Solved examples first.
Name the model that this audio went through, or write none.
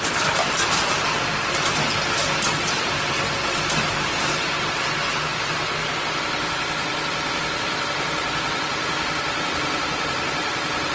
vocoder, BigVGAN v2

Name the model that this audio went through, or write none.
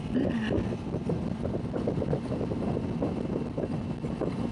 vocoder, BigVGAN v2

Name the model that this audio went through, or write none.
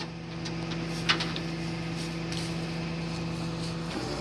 none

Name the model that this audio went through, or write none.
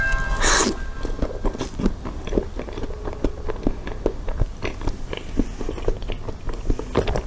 none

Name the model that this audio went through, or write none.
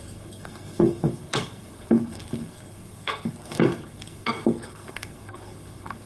codec, SNAC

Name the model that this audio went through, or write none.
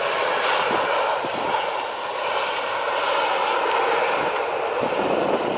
none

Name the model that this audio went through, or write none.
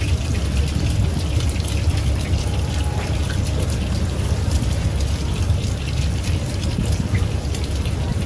vocoder, BigVGAN v2